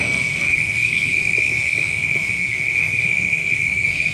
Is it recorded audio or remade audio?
remade